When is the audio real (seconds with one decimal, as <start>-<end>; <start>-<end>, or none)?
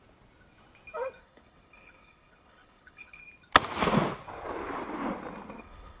0.0-1.2; 3.2-5.6